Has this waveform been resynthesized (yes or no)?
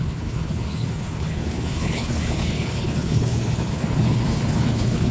yes